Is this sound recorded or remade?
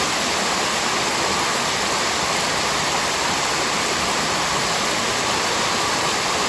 recorded